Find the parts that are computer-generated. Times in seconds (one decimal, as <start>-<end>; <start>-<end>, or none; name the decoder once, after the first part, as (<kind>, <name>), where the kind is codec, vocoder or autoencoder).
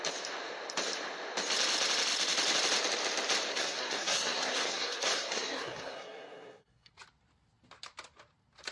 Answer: 3.5-6.9 (codec, SNAC)